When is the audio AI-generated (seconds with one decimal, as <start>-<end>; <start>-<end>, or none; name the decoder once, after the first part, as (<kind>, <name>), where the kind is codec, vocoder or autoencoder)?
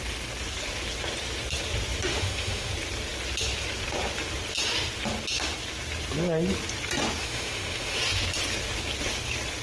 2.1-2.7 (autoencoder, DAC-VAE); 7.2-8.0